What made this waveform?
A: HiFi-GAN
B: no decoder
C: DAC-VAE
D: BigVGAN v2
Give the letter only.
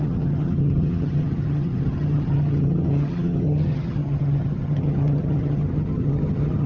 A